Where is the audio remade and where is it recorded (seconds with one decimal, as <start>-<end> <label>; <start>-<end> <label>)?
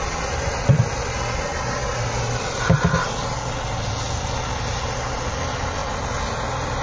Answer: 0.0-6.8 recorded